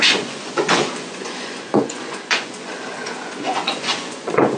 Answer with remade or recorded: remade